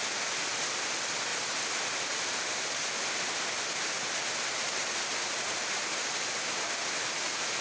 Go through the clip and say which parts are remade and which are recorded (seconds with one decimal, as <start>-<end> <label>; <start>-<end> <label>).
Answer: 0.0-7.6 recorded